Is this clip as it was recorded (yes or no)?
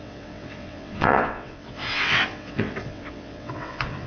no